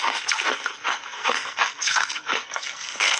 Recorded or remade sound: remade